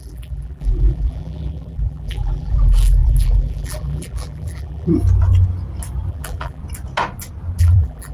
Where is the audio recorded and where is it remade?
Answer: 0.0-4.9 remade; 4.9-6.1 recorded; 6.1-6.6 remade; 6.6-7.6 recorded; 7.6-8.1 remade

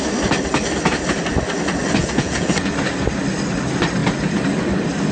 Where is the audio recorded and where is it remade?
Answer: 0.0-2.0 recorded; 2.0-2.7 remade; 2.7-5.1 recorded